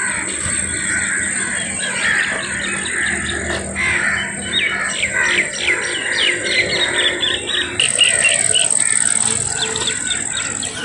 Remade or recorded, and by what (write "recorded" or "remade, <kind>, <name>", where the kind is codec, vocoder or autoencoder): recorded